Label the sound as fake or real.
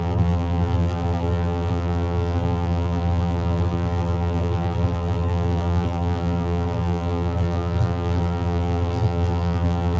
fake